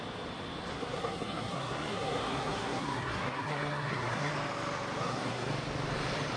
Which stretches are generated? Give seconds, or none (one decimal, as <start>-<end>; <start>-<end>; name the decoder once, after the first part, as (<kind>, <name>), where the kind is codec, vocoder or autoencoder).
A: 0.7-4.3 (codec, SNAC); 5.0-5.5